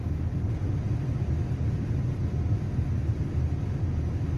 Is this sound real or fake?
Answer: real